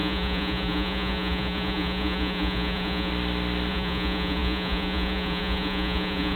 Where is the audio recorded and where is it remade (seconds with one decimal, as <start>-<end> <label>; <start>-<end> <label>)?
0.0-3.1 remade; 3.1-3.7 recorded; 3.7-6.4 remade